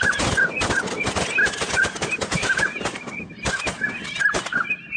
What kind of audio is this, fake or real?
real